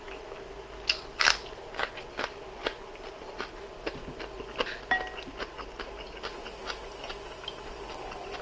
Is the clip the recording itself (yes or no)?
yes